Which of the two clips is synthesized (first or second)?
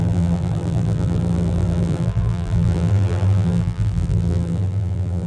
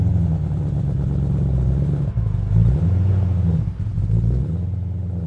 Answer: first